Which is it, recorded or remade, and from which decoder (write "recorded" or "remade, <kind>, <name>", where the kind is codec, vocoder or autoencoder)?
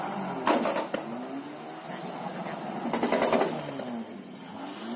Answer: recorded